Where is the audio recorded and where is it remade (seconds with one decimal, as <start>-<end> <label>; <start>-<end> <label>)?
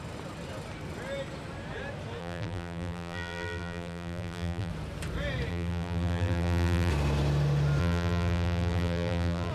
0.0-2.2 recorded; 2.2-4.7 remade; 4.7-5.5 recorded; 5.5-6.9 remade; 6.9-7.8 recorded; 7.8-9.5 remade